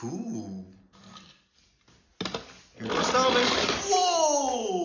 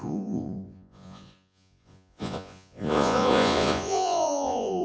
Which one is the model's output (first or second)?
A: second